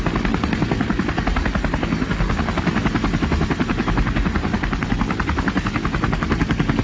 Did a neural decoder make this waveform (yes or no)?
no